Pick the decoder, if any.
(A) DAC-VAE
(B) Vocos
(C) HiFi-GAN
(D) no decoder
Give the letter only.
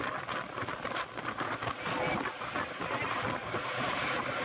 D